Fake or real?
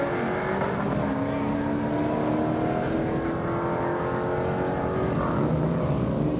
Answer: real